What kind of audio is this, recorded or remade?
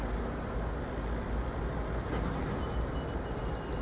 recorded